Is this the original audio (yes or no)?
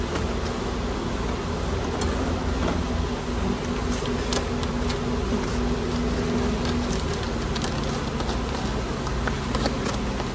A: yes